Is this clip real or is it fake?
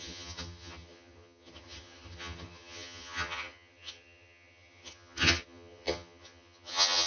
fake